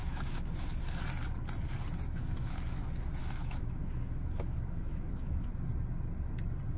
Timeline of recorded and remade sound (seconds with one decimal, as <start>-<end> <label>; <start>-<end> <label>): 0.0-0.8 remade; 0.8-2.2 recorded; 2.2-2.8 remade; 2.8-3.2 recorded; 3.2-5.5 remade; 5.5-6.8 recorded